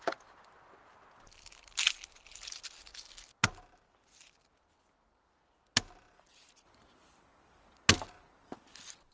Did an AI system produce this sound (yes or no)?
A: no